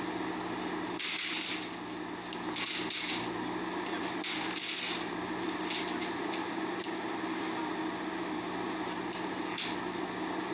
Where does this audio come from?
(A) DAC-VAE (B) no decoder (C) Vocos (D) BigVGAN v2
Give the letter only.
B